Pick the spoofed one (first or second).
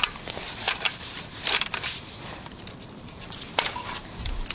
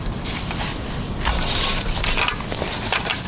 first